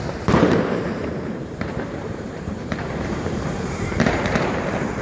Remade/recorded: remade